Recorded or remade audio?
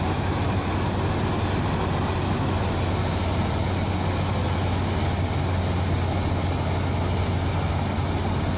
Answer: recorded